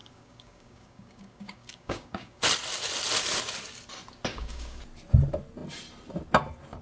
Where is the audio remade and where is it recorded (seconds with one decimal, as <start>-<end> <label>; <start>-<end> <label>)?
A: 0.0-2.4 remade; 2.4-4.3 recorded; 4.3-4.8 remade; 4.8-6.8 recorded